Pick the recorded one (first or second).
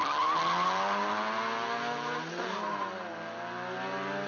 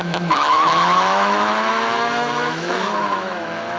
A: first